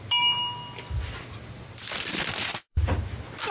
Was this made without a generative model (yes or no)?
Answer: yes